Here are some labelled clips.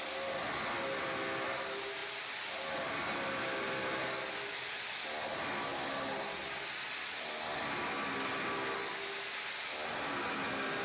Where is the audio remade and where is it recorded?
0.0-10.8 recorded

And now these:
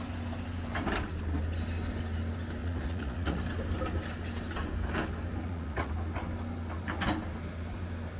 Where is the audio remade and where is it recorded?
0.0-2.6 recorded; 2.6-3.4 remade; 3.4-5.4 recorded; 5.4-5.9 remade; 5.9-8.2 recorded

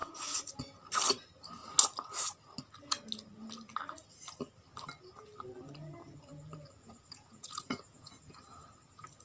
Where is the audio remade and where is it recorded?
0.0-0.6 remade; 0.6-6.8 recorded; 6.8-8.2 remade; 8.2-9.2 recorded